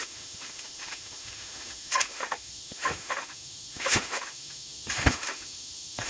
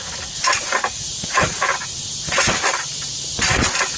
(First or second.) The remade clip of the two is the first